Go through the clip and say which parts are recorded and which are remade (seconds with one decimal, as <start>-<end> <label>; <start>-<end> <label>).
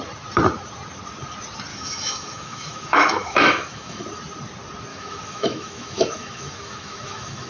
0.0-1.7 recorded; 1.7-4.0 remade; 4.0-4.9 recorded; 4.9-7.5 remade